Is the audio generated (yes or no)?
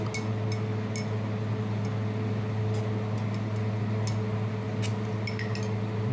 no